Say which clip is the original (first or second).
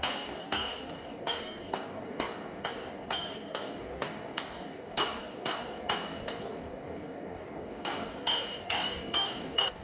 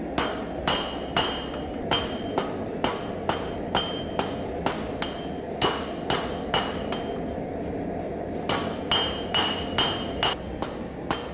second